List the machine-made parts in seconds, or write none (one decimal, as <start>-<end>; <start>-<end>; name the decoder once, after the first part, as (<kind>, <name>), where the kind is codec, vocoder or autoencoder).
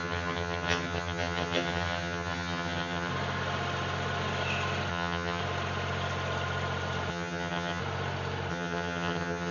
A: 0.0-3.1 (vocoder, HiFi-GAN); 4.9-5.4; 7.1-7.8; 8.5-9.5